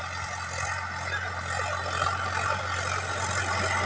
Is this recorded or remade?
recorded